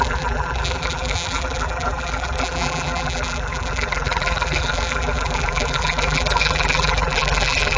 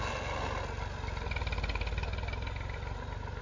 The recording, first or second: second